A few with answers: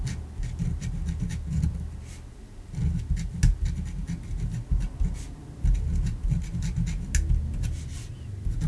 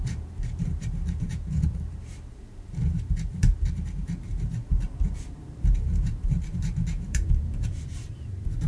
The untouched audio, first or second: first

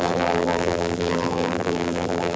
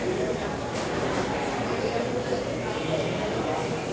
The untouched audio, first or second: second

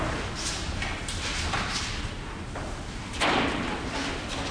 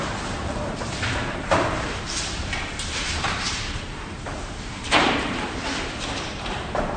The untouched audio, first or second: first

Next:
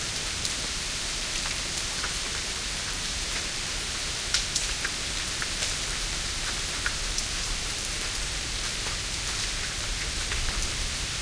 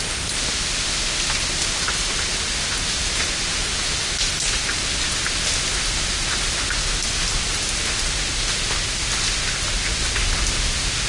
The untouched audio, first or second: second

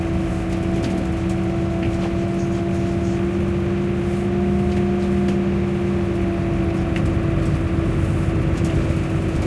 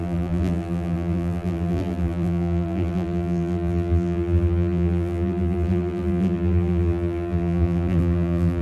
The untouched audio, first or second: first